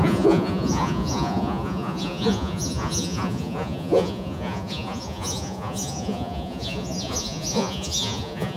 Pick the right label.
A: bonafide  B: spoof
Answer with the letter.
B